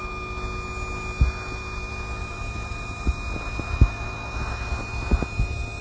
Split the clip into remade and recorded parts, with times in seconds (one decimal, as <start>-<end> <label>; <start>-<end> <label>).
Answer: 0.0-2.2 recorded; 2.2-3.1 remade; 3.1-5.8 recorded